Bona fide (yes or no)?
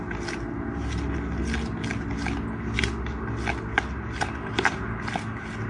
yes